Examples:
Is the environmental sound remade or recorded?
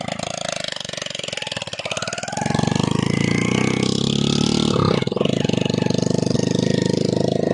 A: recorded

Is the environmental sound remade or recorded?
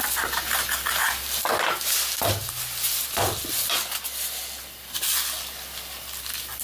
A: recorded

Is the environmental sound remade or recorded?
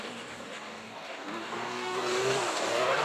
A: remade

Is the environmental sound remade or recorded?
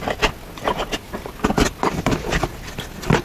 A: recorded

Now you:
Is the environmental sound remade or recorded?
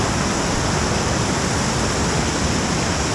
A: recorded